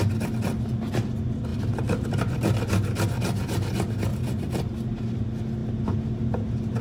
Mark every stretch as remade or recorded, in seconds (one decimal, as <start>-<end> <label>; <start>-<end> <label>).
0.0-1.5 recorded; 1.5-2.2 remade; 2.2-4.1 recorded; 4.1-4.8 remade; 4.8-6.8 recorded